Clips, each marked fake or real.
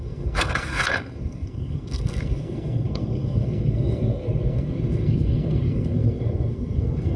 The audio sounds fake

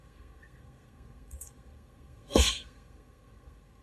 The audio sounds fake